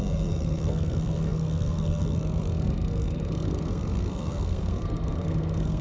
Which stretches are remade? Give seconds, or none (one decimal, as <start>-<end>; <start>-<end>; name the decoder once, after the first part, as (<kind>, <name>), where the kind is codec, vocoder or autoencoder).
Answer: 0.0-5.8 (codec, SNAC)